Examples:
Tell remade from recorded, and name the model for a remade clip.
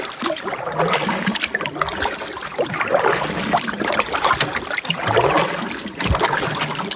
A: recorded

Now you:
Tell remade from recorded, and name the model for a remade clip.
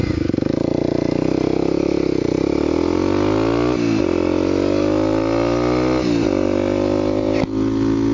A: recorded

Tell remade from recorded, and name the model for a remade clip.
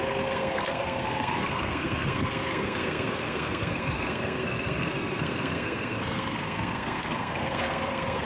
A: remade, codec, SNAC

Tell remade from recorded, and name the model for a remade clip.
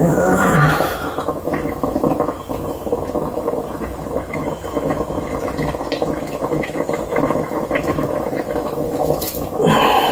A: remade, autoencoder, DAC-VAE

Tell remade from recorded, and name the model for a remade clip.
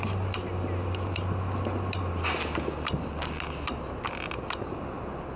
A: recorded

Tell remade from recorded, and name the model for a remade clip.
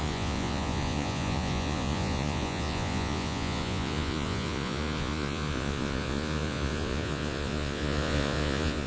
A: remade, vocoder, Vocos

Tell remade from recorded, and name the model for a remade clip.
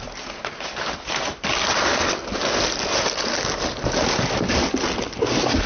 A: recorded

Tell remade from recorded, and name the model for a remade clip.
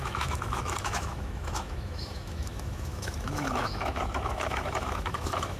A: remade, autoencoder, DAC-VAE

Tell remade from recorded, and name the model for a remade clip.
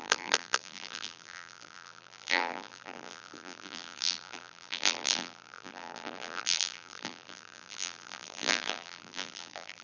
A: remade, vocoder, BigVGAN v2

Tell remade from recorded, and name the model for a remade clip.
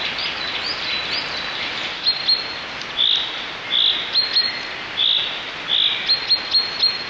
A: recorded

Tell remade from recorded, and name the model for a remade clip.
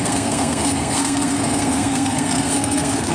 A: remade, codec, SNAC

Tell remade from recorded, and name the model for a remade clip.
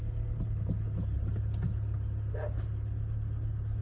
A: recorded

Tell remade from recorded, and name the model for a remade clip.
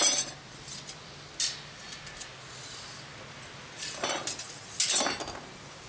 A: recorded